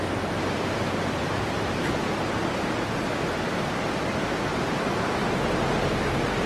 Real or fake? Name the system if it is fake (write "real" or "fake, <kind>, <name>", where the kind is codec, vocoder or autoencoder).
real